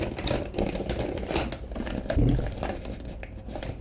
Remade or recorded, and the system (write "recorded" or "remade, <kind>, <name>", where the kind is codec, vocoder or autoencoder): recorded